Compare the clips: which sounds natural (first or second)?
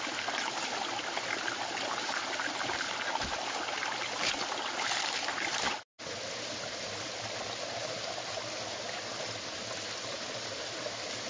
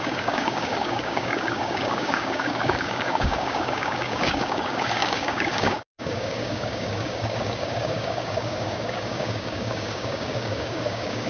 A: first